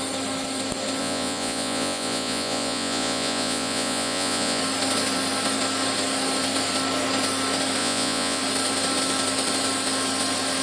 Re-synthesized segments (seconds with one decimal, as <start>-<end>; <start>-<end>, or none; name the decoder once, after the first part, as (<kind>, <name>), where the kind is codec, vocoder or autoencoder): 1.0-4.6 (vocoder, Vocos); 7.8-8.4